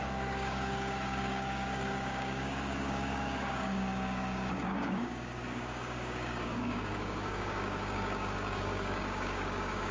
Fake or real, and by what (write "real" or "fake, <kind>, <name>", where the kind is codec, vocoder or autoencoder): fake, codec, DAC